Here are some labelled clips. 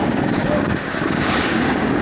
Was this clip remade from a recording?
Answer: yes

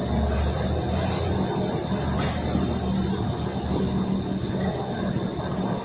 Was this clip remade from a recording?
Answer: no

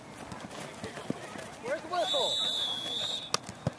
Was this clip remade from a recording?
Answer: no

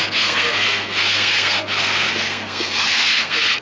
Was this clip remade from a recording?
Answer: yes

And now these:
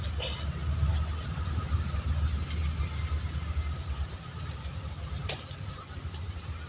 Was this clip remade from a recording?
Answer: no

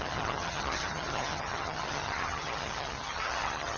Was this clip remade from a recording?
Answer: yes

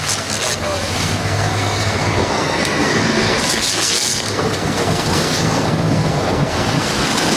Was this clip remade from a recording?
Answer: yes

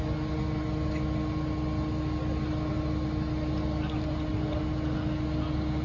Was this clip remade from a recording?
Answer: no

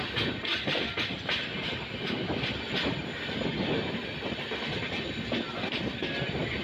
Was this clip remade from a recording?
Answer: no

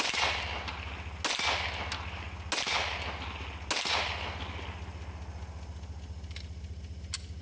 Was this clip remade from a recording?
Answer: no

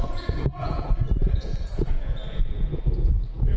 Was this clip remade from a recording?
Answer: yes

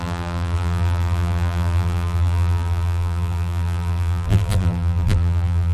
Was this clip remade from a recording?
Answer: yes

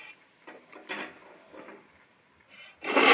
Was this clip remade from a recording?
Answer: no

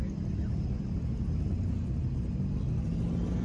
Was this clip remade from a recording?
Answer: no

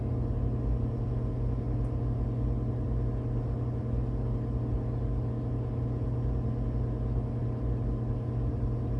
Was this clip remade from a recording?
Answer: no